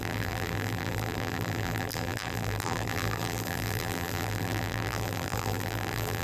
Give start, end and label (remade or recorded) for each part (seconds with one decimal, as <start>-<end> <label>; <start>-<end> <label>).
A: 0.0-6.2 remade